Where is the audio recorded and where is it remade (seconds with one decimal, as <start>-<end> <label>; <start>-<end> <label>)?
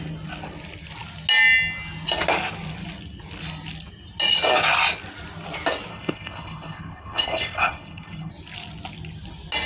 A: 0.0-5.9 recorded; 5.9-8.3 remade; 8.3-9.7 recorded